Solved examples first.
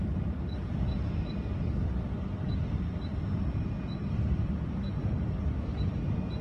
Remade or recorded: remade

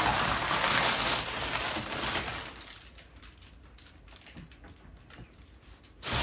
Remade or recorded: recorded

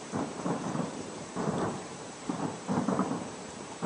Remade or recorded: remade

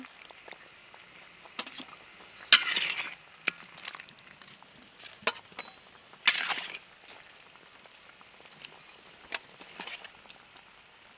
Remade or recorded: recorded